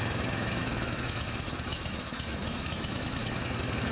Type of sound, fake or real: fake